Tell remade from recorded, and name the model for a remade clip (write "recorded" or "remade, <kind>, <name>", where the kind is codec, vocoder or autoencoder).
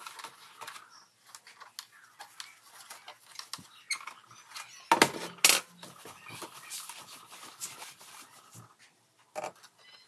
recorded